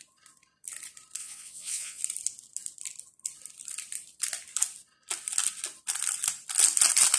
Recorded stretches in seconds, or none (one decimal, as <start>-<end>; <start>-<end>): 0.0-1.2; 2.0-7.2